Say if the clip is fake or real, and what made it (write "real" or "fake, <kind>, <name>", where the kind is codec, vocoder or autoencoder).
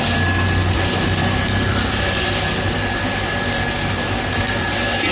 real